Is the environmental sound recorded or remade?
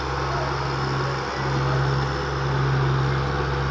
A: recorded